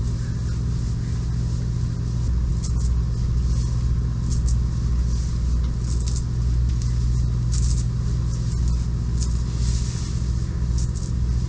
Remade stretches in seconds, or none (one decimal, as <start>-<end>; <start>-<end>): none